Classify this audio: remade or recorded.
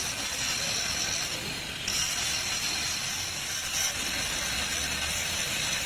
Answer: recorded